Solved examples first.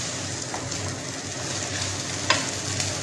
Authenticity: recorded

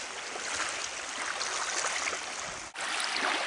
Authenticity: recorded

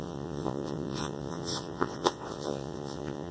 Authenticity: remade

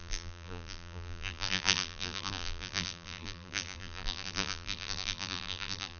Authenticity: remade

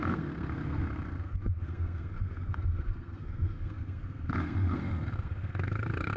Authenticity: remade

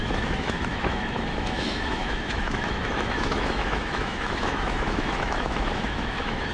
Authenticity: remade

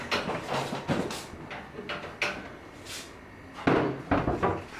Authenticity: recorded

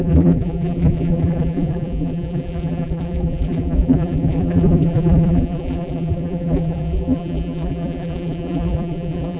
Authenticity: remade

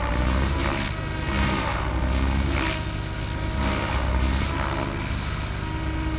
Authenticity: recorded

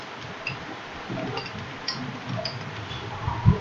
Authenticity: recorded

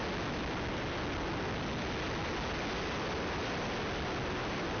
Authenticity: recorded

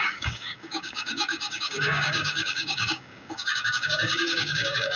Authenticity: remade